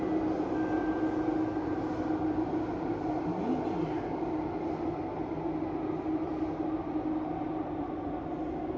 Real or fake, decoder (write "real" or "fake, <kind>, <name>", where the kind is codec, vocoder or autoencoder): real